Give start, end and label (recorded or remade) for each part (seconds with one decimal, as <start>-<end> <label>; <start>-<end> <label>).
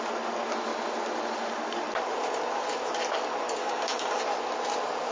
0.0-3.6 recorded; 3.6-4.2 remade; 4.2-5.1 recorded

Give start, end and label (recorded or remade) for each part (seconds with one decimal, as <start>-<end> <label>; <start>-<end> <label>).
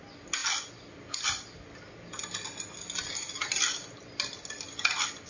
0.0-5.3 recorded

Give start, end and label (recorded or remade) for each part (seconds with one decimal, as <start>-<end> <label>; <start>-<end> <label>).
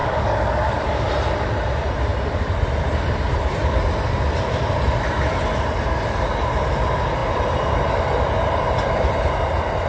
0.0-1.1 remade; 1.1-9.9 recorded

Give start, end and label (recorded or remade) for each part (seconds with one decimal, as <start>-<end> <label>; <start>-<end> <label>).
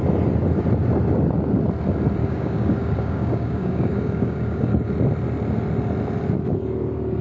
0.0-2.2 recorded; 2.2-4.9 remade; 4.9-7.2 recorded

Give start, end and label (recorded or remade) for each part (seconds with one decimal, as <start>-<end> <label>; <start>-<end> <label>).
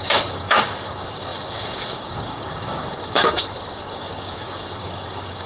0.0-5.5 remade